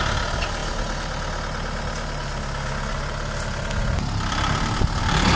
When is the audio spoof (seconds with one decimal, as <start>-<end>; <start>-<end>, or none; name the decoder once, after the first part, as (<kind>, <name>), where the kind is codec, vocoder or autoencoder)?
none